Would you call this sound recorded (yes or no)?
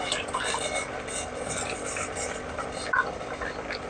yes